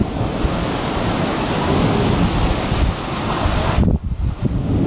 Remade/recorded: recorded